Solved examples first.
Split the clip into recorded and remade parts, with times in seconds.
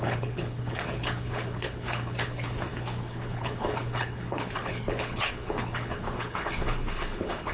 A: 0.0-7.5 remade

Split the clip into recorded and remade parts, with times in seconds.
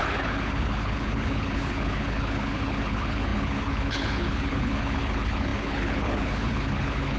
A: 0.0-7.2 remade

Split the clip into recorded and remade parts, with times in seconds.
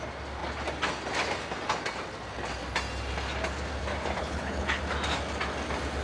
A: 0.0-4.2 recorded; 4.2-4.8 remade; 4.8-6.0 recorded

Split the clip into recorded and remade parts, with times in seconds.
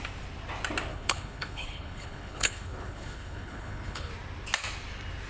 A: 0.0-0.9 recorded; 0.9-4.1 remade; 4.1-5.3 recorded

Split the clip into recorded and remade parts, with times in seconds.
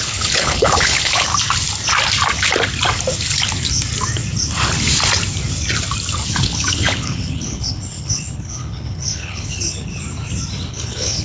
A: 0.0-1.3 remade; 1.3-6.3 recorded; 6.3-9.9 remade; 9.9-10.7 recorded; 10.7-11.2 remade